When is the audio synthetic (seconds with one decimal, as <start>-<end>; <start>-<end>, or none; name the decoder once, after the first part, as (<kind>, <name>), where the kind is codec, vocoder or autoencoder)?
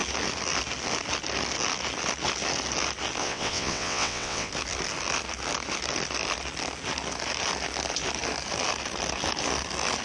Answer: 3.2-4.5 (vocoder, WaveNeXt)